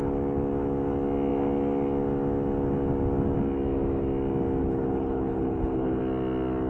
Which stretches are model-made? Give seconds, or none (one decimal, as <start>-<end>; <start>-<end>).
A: 4.6-6.0